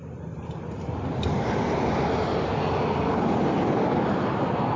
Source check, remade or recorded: recorded